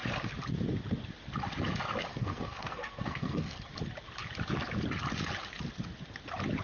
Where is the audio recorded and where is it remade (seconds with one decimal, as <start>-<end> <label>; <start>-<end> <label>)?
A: 0.0-2.1 recorded; 2.1-3.7 remade; 3.7-6.6 recorded